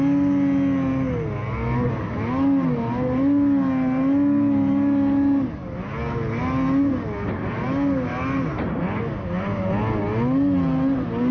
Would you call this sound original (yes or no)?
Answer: yes